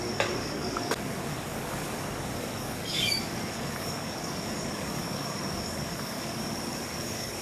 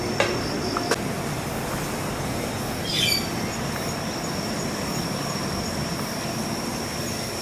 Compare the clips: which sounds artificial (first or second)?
first